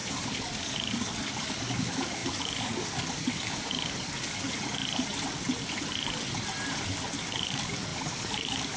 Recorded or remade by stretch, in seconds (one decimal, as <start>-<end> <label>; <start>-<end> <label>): 0.0-4.8 remade; 4.8-7.2 recorded; 7.2-8.8 remade